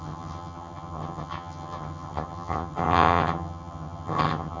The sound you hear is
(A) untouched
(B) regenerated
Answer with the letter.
B